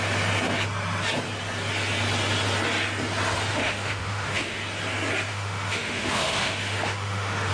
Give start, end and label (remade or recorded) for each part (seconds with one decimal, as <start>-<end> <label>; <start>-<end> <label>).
0.0-3.5 recorded; 3.5-4.6 remade; 4.6-5.3 recorded; 5.3-7.5 remade